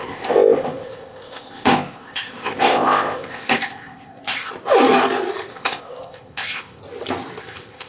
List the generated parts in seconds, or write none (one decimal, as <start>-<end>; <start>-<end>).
0.0-4.5; 5.5-6.8; 7.4-7.9